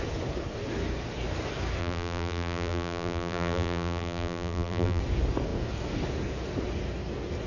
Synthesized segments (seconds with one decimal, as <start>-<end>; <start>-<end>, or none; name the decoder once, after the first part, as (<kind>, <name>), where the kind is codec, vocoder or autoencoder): 1.8-5.0 (vocoder, BigVGAN v2)